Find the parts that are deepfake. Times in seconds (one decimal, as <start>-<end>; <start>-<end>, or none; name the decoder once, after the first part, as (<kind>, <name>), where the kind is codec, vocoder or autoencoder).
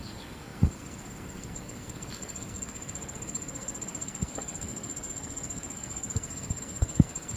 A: 0.0-7.4 (codec, SNAC)